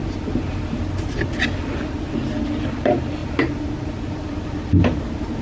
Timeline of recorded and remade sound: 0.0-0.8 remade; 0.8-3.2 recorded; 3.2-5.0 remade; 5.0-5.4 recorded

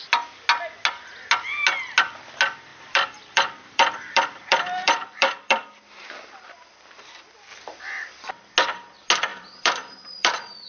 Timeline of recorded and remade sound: 0.0-2.7 recorded; 2.7-5.8 remade; 5.8-7.5 recorded; 7.5-8.3 remade; 8.3-9.3 recorded; 9.3-10.7 remade